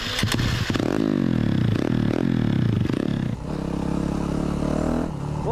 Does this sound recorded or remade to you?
recorded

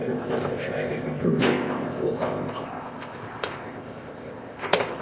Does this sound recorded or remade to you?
remade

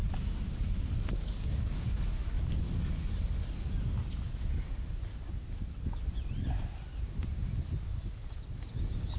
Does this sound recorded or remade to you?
recorded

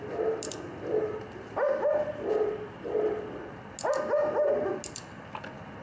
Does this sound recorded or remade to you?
recorded